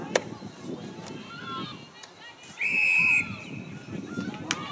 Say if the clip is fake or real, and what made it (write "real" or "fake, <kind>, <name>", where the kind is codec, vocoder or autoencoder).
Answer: real